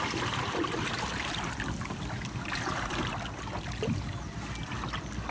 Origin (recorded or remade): recorded